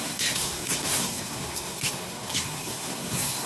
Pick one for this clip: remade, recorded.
remade